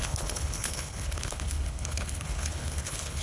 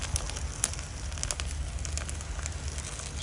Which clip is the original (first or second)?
second